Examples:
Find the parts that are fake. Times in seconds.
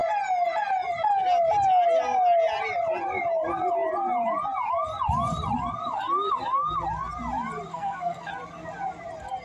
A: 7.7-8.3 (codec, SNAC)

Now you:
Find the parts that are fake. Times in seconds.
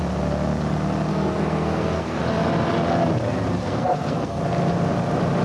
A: 1.1-2.2 (codec, SNAC); 3.6-4.4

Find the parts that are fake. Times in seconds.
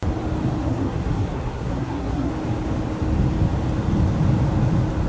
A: 0.6-2.3 (codec, SNAC)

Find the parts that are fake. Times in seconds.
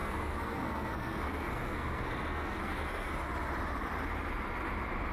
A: 0.0-3.1 (codec, SNAC)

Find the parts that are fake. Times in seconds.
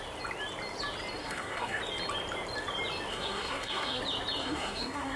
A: 1.2-1.8 (codec, SNAC); 3.1-4.0; 4.4-5.2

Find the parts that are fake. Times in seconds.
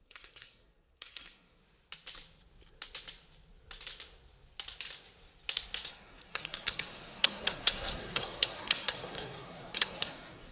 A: 0.0-1.6 (codec, SNAC); 5.9-10.5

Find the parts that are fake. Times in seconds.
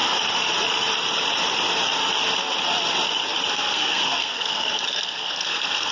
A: 3.5-5.9 (codec, SNAC)